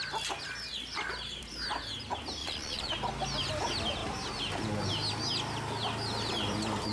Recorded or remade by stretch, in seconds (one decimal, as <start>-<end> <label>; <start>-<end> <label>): 0.0-2.4 recorded; 2.4-2.9 remade; 2.9-6.9 recorded